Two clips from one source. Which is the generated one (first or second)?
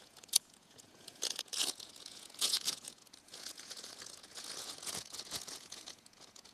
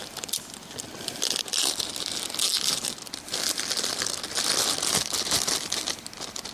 first